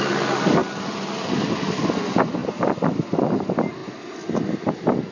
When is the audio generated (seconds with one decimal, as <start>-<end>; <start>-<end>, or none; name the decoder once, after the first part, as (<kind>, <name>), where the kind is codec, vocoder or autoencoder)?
none